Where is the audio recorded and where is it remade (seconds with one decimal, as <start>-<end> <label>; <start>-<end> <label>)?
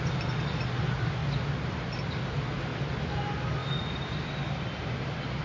0.0-5.4 recorded